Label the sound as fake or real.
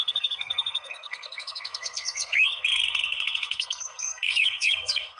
fake